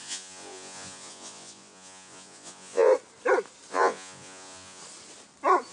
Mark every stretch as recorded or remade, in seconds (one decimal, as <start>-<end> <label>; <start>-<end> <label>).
0.0-2.9 remade; 2.9-3.7 recorded; 3.7-4.8 remade; 4.8-5.7 recorded